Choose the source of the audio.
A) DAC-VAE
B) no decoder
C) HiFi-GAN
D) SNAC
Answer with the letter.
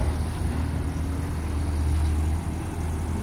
B